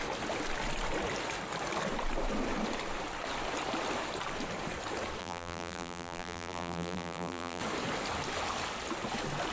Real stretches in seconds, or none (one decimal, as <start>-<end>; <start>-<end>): 0.0-5.2; 7.6-9.5

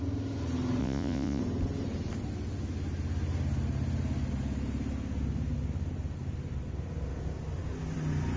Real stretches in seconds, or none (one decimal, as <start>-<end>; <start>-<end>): 0.0-0.8; 1.4-8.4

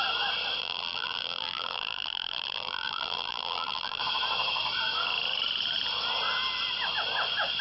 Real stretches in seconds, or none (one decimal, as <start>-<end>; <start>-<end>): 0.0-0.6; 4.0-7.6

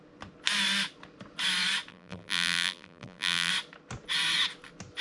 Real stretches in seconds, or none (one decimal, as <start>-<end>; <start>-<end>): 0.0-1.9; 3.5-5.0

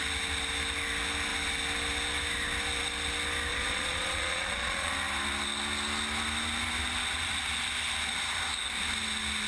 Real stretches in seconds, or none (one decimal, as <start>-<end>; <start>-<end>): 0.0-3.5; 4.9-9.5

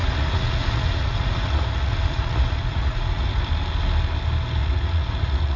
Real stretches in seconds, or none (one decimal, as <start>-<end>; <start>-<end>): 3.4-4.6

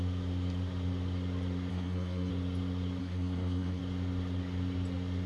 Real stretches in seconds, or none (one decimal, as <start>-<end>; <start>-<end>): 0.0-1.7; 2.3-3.0; 3.8-5.3